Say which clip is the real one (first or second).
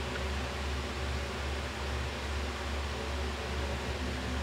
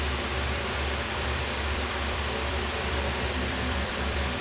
first